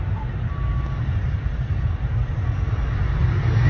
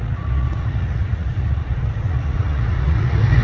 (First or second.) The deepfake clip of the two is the second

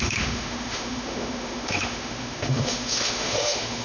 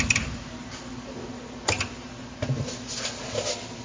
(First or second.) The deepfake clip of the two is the first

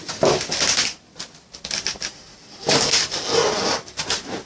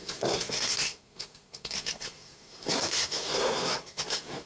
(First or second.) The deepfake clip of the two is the second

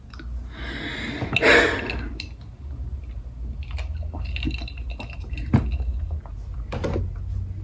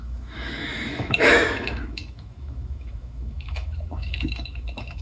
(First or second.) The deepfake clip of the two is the second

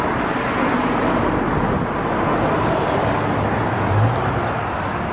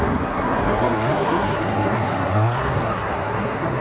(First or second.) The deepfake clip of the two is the second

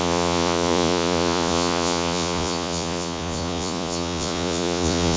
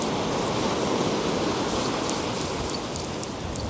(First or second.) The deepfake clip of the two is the first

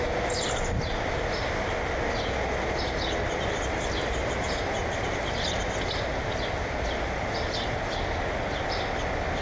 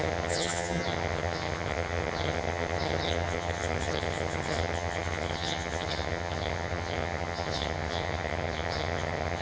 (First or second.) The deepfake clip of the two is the second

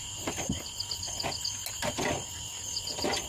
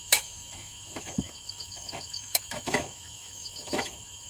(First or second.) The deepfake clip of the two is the second